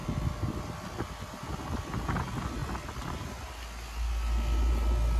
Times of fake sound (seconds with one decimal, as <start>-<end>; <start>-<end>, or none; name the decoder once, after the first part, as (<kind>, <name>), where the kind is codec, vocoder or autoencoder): none